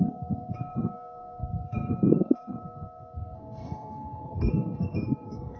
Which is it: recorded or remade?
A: remade